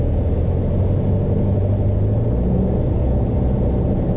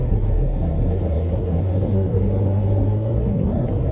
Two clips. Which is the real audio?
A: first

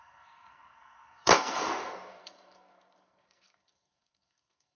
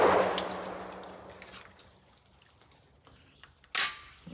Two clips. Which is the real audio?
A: second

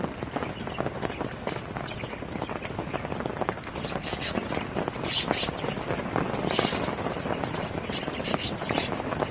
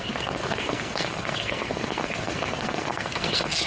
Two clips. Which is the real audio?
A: first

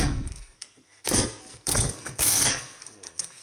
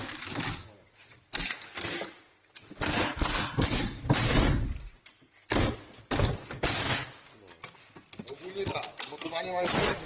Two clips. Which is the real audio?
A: second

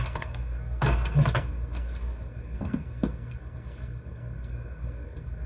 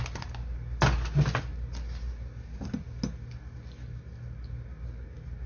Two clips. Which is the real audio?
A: second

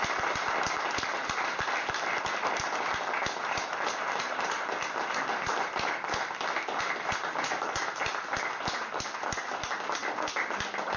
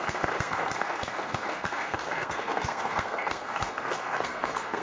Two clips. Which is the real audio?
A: first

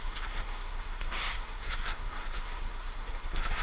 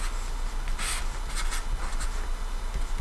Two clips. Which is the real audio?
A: second